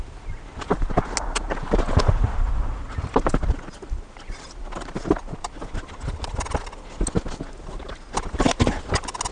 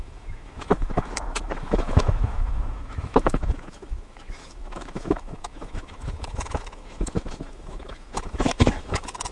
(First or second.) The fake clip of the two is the second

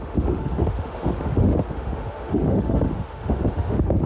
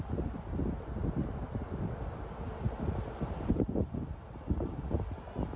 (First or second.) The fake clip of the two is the first